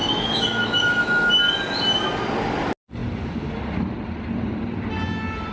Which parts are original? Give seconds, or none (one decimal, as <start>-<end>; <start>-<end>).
1.3-5.5